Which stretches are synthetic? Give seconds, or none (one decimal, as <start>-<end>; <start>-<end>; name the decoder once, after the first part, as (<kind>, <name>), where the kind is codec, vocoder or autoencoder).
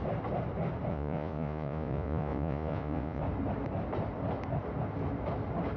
0.9-3.2 (vocoder, Vocos)